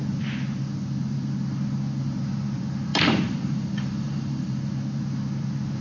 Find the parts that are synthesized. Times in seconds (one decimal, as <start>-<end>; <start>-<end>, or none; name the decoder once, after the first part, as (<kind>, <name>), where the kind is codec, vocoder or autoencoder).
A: 2.9-4.6 (vocoder, BigVGAN v2)

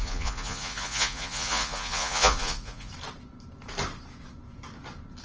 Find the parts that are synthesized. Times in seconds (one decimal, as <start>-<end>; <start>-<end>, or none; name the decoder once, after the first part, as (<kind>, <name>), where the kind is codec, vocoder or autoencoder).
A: 0.0-2.9 (vocoder, Vocos)

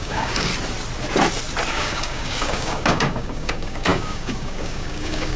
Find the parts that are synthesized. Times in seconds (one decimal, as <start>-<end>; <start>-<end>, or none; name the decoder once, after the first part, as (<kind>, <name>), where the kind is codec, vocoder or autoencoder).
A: 0.0-0.5 (codec, DAC); 1.7-5.4

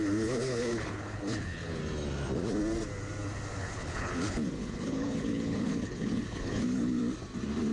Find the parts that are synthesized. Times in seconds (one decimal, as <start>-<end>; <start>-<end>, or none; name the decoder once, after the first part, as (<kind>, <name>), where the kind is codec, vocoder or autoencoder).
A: 0.0-1.8 (codec, HILCodec); 3.6-7.0

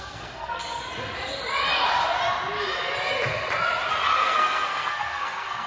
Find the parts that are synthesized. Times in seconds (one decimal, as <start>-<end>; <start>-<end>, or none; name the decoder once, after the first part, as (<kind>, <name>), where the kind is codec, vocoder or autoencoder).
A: 0.0-0.8 (codec, SNAC); 4.2-5.7

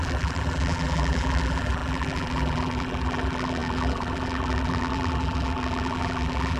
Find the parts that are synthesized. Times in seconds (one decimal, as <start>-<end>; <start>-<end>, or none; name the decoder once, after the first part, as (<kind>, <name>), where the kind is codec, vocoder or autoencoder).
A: 0.0-6.6 (vocoder, BigVGAN v2)

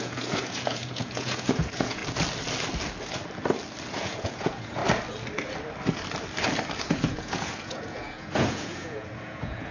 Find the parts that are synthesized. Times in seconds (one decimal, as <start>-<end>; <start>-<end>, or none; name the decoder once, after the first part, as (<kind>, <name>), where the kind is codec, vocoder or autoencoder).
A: 0.0-2.0 (vocoder, Vocos); 3.9-4.8; 6.9-9.7

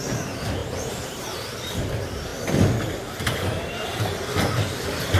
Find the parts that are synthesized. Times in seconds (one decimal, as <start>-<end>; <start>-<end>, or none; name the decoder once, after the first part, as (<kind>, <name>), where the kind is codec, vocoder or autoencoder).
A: 0.6-1.9 (vocoder, BigVGAN v2)